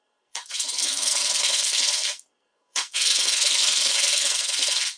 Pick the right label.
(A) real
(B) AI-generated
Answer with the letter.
B